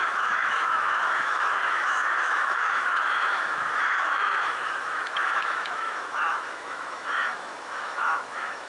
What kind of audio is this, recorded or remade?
remade